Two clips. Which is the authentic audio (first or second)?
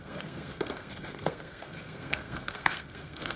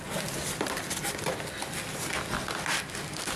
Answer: second